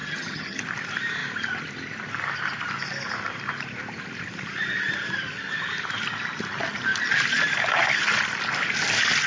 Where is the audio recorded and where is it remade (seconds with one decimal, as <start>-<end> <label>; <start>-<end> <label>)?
0.0-0.6 remade; 0.6-9.3 recorded